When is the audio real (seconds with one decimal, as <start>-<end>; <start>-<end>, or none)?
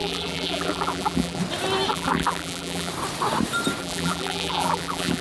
1.4-1.9; 2.9-3.8